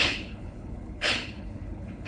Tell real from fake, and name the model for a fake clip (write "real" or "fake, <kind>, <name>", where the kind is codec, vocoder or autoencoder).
fake, codec, HILCodec